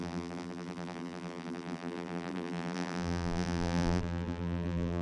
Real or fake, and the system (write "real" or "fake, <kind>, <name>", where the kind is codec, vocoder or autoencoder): fake, vocoder, BigVGAN v2